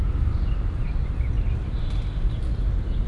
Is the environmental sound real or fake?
real